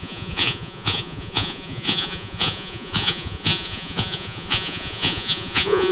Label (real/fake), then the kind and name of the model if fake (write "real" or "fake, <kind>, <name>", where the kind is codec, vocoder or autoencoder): fake, vocoder, Vocos